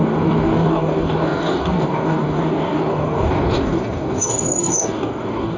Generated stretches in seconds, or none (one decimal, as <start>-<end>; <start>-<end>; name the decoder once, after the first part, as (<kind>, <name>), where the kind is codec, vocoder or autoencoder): 0.0-5.6 (codec, DAC)